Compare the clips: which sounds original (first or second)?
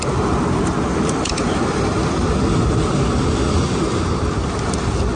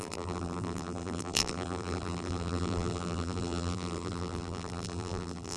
first